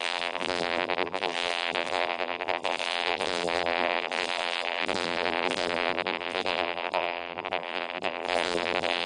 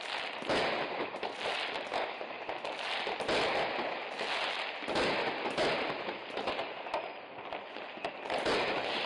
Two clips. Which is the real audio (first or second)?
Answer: second